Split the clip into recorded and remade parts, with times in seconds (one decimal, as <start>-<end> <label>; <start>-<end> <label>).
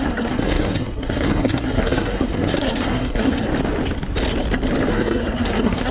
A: 0.0-3.5 remade; 3.5-4.9 recorded; 4.9-5.9 remade